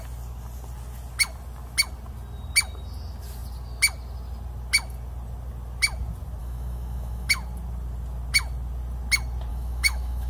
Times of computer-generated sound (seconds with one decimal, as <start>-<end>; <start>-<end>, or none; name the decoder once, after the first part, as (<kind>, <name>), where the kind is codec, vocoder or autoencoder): 6.4-7.3 (autoencoder, DAC-VAE); 9.5-10.3